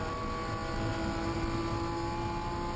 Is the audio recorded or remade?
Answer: recorded